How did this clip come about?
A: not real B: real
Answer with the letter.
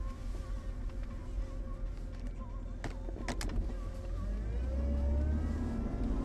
B